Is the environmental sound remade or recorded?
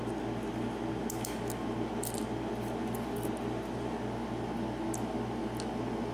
recorded